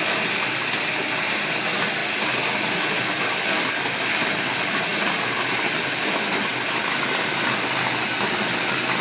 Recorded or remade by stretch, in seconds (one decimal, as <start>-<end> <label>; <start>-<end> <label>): 0.0-9.0 recorded